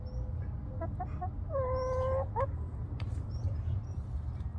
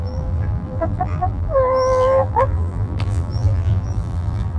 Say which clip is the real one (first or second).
first